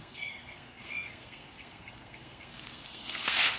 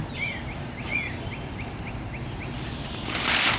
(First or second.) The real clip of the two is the second